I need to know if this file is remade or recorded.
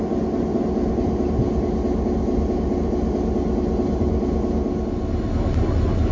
recorded